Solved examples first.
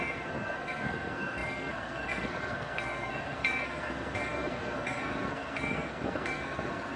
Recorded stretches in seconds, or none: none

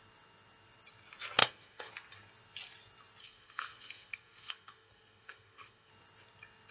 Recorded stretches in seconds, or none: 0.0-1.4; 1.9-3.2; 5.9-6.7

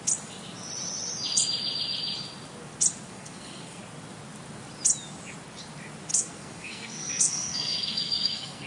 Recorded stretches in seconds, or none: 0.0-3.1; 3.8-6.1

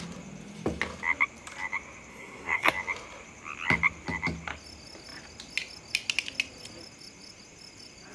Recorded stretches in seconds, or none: 0.0-2.1; 2.7-8.1